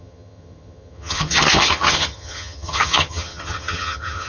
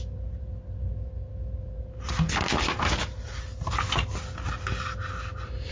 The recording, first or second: second